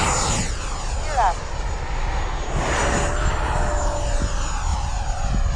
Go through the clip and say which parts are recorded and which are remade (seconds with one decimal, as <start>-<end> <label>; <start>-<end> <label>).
0.0-5.6 recorded